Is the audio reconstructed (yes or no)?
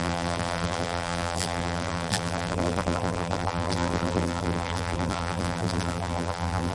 yes